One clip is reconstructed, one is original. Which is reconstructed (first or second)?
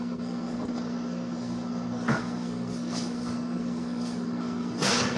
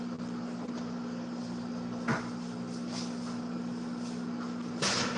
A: first